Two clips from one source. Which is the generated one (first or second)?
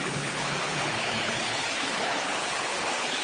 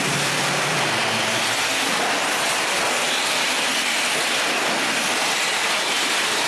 first